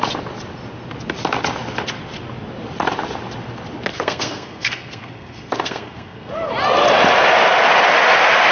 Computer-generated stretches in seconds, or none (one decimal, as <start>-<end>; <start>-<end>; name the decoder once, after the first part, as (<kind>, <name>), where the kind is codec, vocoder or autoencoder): 3.9-6.3 (codec, SNAC)